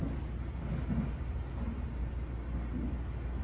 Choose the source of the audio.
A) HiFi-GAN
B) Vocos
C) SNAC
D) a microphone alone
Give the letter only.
D